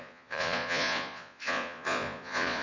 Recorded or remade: remade